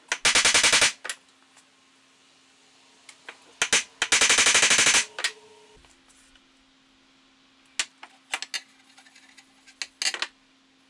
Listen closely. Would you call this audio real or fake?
real